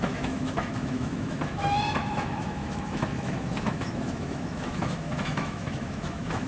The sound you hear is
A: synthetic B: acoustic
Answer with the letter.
A